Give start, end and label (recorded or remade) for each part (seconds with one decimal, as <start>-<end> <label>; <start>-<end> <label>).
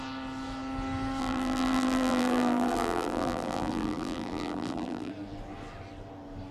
0.0-1.2 recorded; 1.2-5.1 remade; 5.1-6.5 recorded